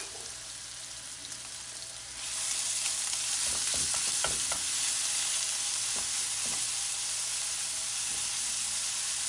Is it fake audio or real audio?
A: real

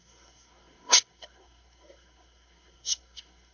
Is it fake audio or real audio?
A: fake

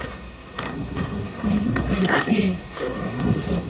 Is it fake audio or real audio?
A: fake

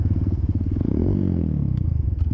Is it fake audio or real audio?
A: fake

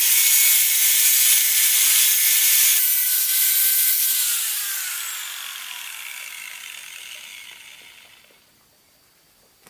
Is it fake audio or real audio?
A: real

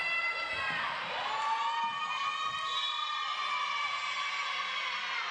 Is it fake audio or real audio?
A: real